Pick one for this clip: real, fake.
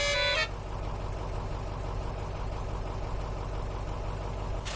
real